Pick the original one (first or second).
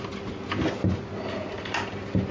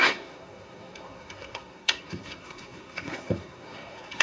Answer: first